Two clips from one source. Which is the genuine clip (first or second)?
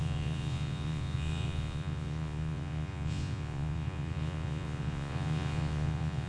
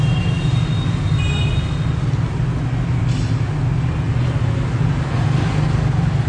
second